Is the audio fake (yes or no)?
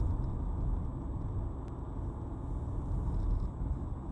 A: no